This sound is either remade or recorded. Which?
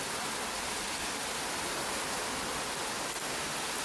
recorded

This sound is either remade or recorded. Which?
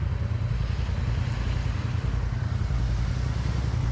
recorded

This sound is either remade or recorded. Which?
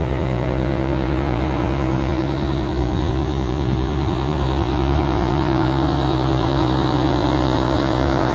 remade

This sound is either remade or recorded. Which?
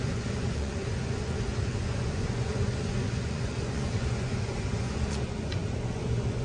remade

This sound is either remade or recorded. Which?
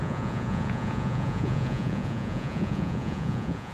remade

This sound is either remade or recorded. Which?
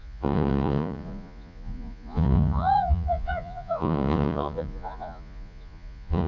remade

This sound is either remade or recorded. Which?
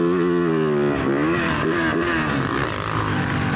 recorded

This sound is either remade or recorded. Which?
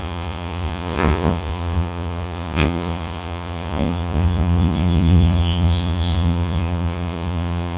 remade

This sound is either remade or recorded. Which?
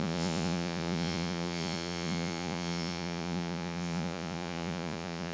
remade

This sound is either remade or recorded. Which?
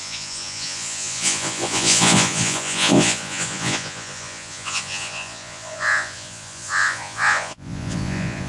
remade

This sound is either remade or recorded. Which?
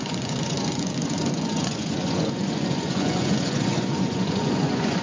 remade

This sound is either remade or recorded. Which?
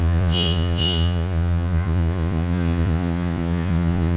remade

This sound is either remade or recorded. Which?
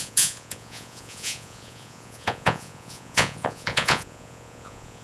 remade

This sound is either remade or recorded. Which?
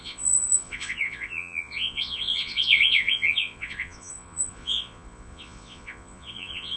remade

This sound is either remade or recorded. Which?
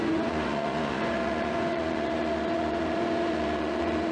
remade